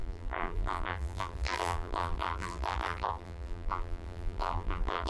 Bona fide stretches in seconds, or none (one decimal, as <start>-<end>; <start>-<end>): none